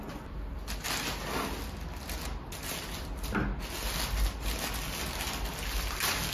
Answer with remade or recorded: recorded